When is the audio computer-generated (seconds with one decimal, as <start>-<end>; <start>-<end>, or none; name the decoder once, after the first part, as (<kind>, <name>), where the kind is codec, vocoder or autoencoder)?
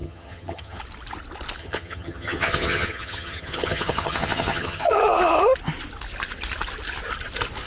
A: 0.0-0.8 (vocoder, HiFi-GAN); 1.6-5.0